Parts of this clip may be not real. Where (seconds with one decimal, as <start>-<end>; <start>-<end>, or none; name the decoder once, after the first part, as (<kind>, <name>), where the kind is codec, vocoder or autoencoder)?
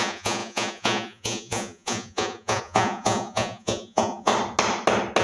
0.0-4.3 (vocoder, Vocos)